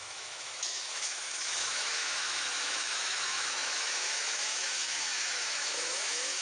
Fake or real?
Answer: fake